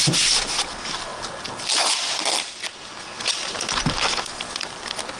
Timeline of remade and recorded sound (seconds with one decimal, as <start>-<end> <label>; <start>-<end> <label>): 0.0-5.2 recorded